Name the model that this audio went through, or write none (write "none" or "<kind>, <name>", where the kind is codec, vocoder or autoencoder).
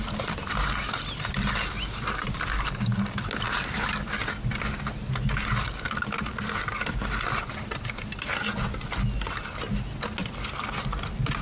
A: none